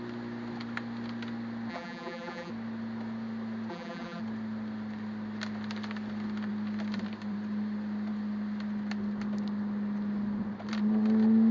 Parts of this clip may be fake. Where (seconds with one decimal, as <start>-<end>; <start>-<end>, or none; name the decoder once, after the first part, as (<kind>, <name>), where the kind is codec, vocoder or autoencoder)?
1.7-2.5 (vocoder, BigVGAN v2); 3.7-4.2